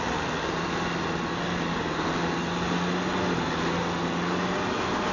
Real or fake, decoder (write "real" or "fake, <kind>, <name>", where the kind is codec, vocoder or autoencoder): real